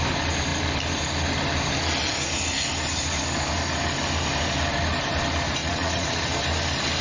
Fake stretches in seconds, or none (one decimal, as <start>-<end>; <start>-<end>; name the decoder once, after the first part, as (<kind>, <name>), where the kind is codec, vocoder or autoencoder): 5.6-6.2 (vocoder, Vocos)